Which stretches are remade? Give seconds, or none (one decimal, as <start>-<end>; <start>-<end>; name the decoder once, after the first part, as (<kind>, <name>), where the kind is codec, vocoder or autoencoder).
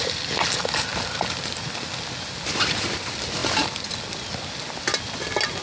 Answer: none